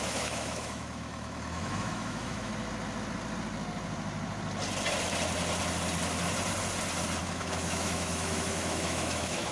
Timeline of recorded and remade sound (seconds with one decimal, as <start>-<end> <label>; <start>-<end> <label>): 0.0-2.5 remade; 2.5-7.2 recorded; 7.2-9.5 remade